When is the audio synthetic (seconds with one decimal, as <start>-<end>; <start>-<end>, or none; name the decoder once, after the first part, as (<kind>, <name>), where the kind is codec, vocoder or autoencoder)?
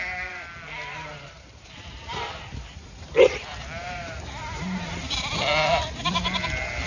1.1-5.2 (vocoder, BigVGAN v2)